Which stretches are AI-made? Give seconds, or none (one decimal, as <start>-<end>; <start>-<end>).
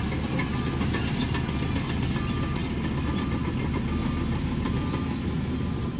none